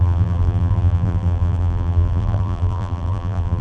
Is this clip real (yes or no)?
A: no